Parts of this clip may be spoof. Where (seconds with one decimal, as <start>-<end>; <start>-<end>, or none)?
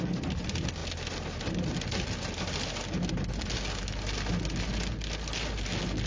none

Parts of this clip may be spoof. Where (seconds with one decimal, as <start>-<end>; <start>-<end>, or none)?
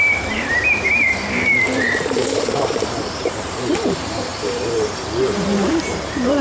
0.0-6.4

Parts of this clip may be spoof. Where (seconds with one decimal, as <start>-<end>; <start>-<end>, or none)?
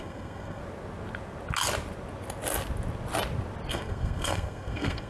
0.0-0.6; 3.7-5.1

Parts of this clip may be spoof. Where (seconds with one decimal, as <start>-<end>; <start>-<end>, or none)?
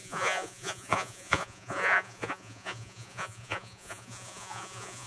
0.0-5.1